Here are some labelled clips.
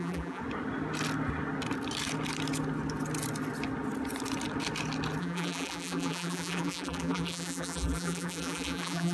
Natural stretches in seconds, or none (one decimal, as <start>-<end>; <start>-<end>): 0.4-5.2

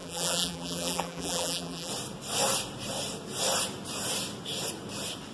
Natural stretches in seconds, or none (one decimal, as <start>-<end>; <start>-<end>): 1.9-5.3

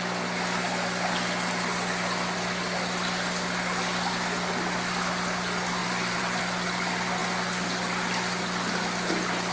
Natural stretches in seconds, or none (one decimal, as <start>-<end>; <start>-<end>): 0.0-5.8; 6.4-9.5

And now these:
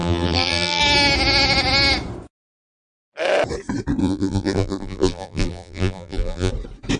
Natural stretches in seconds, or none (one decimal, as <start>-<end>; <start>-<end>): 0.8-4.0; 6.5-7.0